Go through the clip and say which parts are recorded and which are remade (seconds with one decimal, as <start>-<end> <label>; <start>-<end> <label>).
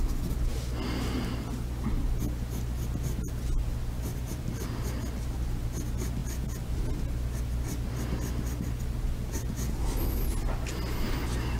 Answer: 0.0-4.1 recorded; 4.1-4.7 remade; 4.7-11.6 recorded